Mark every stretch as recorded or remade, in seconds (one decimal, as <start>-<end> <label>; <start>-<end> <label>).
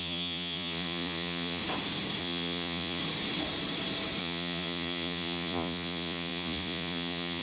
0.0-1.6 remade; 1.6-2.2 recorded; 2.2-3.0 remade; 3.0-4.2 recorded; 4.2-7.4 remade